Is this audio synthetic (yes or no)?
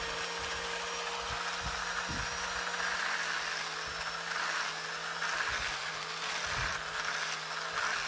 no